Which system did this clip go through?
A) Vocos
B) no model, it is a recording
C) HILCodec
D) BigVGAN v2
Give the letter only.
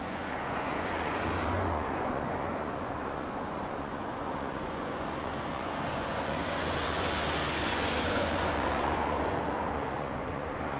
A